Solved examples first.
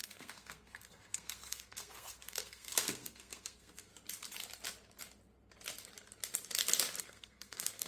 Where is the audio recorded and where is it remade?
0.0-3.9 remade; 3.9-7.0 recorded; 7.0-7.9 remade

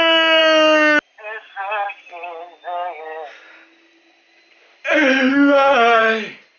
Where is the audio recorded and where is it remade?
0.0-5.3 recorded; 5.3-6.0 remade; 6.0-6.6 recorded

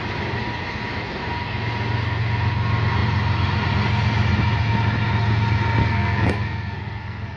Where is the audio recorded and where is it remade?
0.0-5.8 recorded; 5.8-7.4 remade

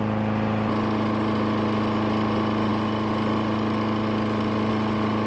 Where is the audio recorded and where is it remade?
0.0-5.3 recorded

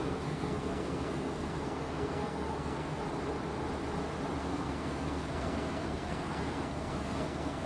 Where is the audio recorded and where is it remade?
0.0-3.0 remade; 3.0-4.4 recorded; 4.4-7.7 remade

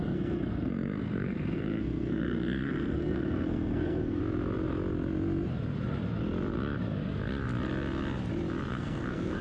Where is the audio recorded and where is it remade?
0.0-4.2 remade; 4.2-8.7 recorded; 8.7-9.4 remade